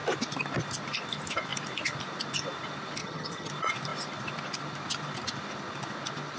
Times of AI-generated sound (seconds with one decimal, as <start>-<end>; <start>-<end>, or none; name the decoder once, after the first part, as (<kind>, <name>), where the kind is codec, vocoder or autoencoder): 3.0-3.5 (vocoder, HiFi-GAN)